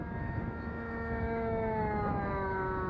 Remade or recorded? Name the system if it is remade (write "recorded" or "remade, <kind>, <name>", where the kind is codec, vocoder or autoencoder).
remade, autoencoder, DAC-VAE